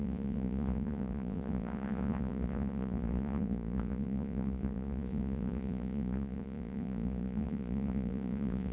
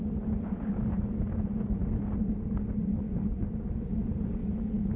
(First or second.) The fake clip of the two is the first